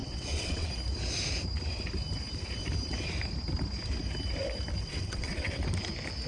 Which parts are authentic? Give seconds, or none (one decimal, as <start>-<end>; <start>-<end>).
0.7-4.8; 5.6-6.3